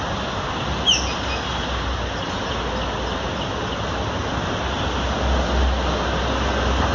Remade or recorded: recorded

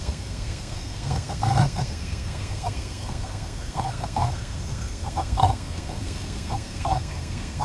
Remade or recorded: remade